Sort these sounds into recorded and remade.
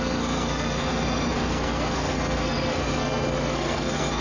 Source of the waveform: remade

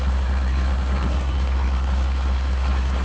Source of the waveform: remade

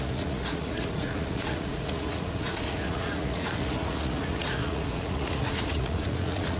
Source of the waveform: remade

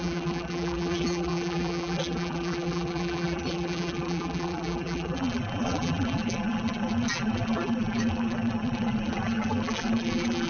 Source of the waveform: remade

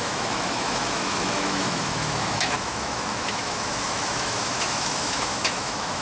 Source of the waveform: remade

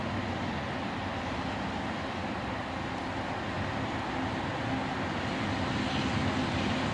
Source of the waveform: recorded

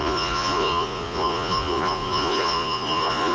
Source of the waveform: remade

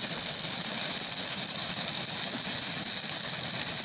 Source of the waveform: recorded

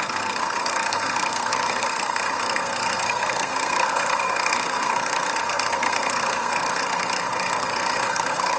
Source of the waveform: remade